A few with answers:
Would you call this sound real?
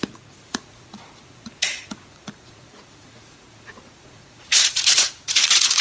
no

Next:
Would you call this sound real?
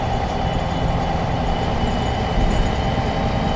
yes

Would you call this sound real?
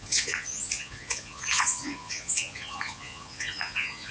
no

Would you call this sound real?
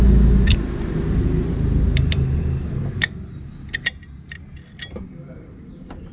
yes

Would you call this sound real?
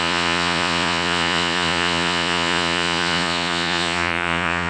no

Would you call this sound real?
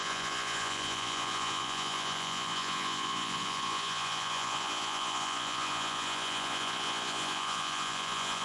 no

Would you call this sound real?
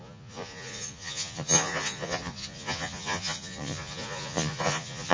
no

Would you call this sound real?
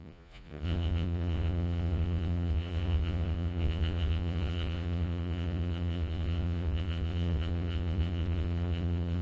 no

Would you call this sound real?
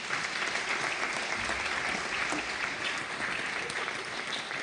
yes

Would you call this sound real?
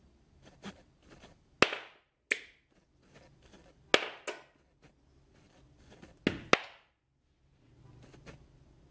yes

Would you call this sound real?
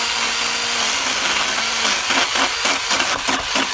yes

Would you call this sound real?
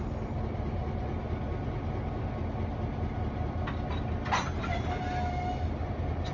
yes